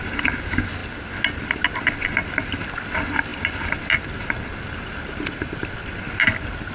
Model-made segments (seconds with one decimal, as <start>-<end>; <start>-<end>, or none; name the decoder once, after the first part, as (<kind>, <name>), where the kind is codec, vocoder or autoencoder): none